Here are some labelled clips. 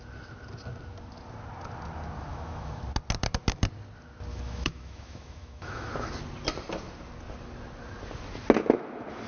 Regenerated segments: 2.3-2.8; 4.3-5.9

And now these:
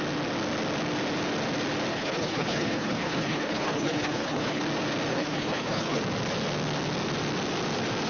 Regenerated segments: 1.9-4.6; 5.1-6.0

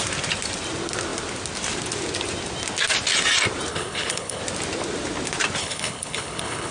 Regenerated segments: 3.7-4.4; 5.6-6.7

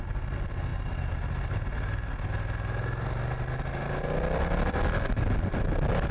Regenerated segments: none